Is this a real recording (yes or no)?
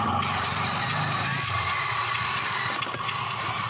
yes